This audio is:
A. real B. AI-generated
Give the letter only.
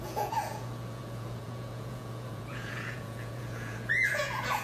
B